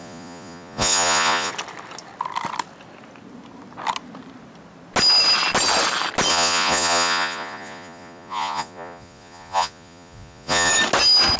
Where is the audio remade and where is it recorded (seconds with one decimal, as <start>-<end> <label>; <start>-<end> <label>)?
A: 0.0-1.5 remade; 1.5-6.3 recorded; 6.3-10.7 remade; 10.7-11.4 recorded